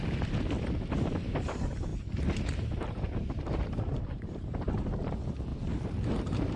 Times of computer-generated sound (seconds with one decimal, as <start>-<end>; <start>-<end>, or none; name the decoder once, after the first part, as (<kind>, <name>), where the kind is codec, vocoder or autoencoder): 1.9-4.7 (vocoder, BigVGAN v2); 5.5-6.6